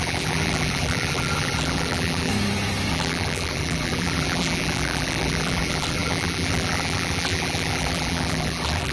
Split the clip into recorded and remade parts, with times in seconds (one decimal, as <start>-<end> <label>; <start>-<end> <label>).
0.0-2.3 remade; 2.3-2.9 recorded; 2.9-8.9 remade